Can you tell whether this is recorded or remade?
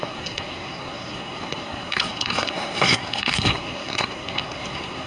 remade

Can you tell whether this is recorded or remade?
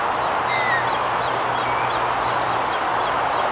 recorded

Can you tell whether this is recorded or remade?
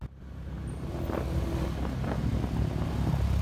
recorded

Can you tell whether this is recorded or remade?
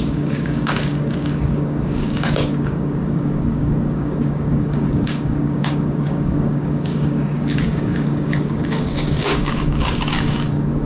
remade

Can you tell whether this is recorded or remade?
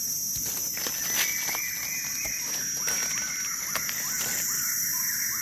recorded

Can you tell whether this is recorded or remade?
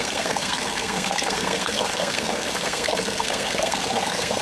remade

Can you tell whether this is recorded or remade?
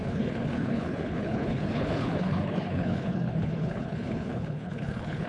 remade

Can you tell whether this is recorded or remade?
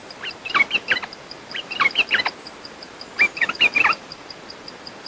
remade